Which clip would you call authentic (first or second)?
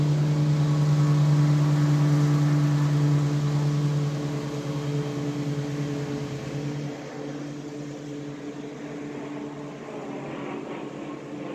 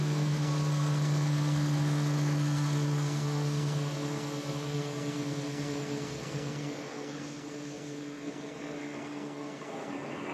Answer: first